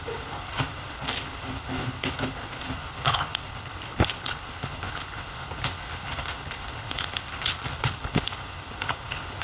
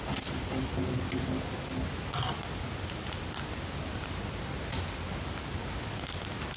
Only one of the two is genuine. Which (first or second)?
second